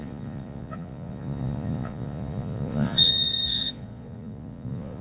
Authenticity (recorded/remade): remade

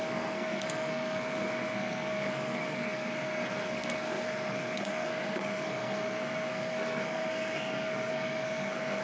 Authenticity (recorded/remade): remade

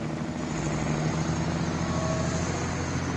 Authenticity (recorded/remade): recorded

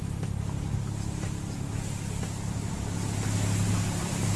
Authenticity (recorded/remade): recorded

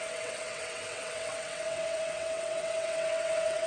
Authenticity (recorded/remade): remade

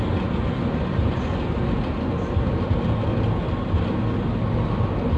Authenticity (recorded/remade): recorded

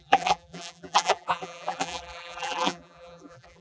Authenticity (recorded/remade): remade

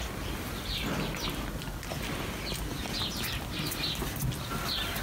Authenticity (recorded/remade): recorded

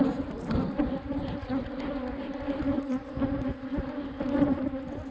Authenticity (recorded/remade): recorded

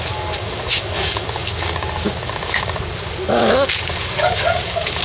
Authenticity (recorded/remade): remade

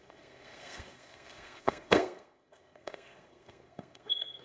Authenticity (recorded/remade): remade